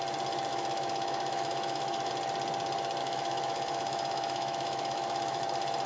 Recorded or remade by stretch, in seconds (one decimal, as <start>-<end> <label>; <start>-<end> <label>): 0.0-0.5 recorded; 0.5-2.1 remade; 2.1-3.0 recorded; 3.0-5.4 remade; 5.4-5.9 recorded